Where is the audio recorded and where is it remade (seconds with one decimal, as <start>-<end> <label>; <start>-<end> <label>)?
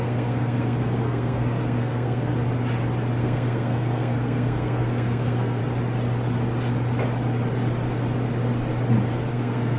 0.0-2.3 remade; 2.3-3.2 recorded; 3.2-5.6 remade; 5.6-9.3 recorded; 9.3-9.8 remade